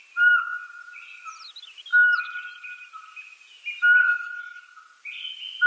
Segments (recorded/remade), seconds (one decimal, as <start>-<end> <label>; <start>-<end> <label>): 0.0-4.0 recorded; 4.0-4.6 remade; 4.6-5.7 recorded